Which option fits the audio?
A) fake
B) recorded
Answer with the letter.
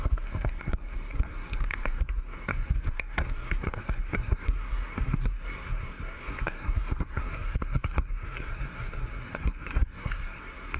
A